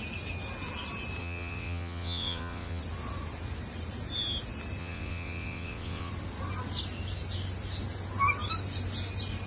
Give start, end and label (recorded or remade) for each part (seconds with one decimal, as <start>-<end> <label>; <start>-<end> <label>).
0.0-1.2 recorded; 1.2-2.8 remade; 2.8-4.8 recorded; 4.8-6.1 remade; 6.1-9.5 recorded